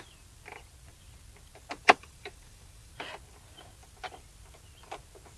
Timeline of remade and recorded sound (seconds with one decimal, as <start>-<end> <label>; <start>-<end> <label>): 0.0-1.8 recorded; 1.8-2.9 remade; 2.9-5.4 recorded